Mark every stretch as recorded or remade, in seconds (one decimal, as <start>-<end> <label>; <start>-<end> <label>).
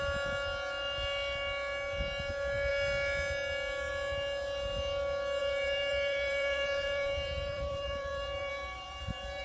0.0-5.4 recorded; 5.4-9.4 remade